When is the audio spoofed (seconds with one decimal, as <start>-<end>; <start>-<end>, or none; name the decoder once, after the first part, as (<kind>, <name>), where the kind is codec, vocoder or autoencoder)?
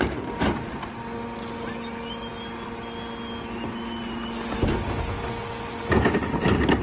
none